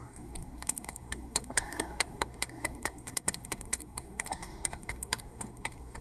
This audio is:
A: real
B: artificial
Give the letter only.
B